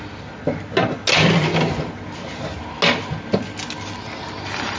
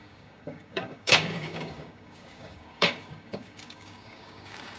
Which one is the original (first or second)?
first